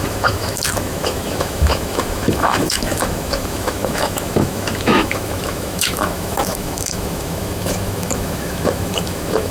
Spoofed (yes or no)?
yes